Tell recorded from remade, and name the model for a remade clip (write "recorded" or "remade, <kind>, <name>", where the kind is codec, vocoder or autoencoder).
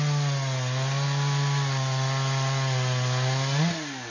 recorded